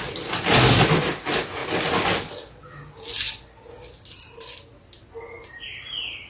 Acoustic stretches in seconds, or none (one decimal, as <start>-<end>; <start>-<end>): 0.0-5.7